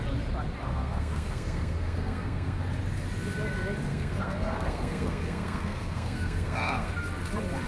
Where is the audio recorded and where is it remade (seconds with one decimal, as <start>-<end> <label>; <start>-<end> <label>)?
0.0-0.6 recorded; 0.6-2.6 remade; 2.6-3.9 recorded; 3.9-6.9 remade; 6.9-7.7 recorded